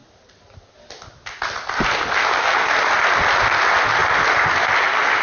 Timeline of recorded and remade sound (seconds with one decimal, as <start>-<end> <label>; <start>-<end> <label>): 0.0-5.2 recorded